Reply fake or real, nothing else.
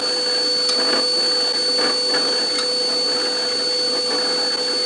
real